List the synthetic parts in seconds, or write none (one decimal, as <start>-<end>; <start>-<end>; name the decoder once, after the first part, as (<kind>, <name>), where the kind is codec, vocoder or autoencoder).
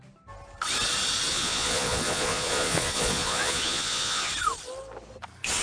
1.3-4.3 (vocoder, Vocos)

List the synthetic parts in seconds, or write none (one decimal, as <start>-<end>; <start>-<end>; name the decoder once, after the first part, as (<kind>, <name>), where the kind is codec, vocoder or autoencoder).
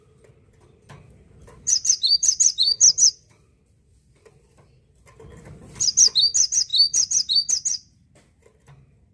1.4-5.6 (vocoder, BigVGAN v2); 6.7-7.5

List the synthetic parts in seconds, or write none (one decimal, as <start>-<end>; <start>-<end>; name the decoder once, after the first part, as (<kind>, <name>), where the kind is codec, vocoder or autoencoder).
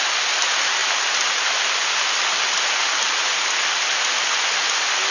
none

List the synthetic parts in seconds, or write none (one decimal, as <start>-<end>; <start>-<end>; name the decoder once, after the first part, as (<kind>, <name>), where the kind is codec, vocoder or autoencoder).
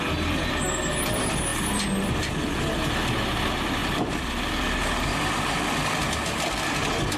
none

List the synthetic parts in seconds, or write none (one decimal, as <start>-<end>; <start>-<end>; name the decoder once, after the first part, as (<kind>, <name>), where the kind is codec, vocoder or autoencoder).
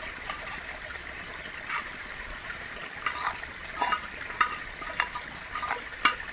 2.8-3.6 (vocoder, BigVGAN v2)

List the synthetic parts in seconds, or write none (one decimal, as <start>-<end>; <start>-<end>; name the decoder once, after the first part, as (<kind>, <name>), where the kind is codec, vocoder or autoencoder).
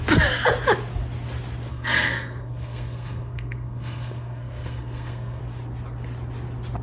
1.7-5.4 (codec, SNAC)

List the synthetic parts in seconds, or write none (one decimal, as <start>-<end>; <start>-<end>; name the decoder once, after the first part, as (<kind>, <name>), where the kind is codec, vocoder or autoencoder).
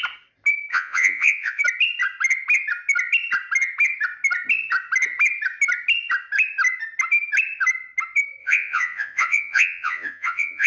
0.7-1.6 (vocoder, Vocos); 8.4-10.7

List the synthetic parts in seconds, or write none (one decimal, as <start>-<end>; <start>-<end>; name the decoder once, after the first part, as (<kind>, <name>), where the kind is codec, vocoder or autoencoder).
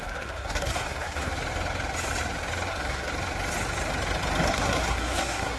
0.0-1.3 (codec, SNAC); 2.7-3.1; 4.5-5.6